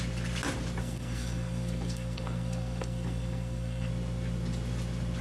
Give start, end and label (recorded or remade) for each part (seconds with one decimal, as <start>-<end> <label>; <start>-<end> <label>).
0.0-0.8 recorded; 0.8-3.9 remade; 3.9-5.2 recorded